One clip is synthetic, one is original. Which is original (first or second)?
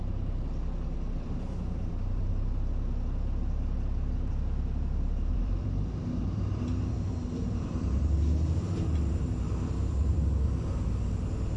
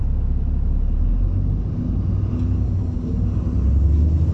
second